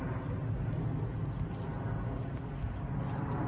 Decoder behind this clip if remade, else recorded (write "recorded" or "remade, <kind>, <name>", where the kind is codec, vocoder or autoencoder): recorded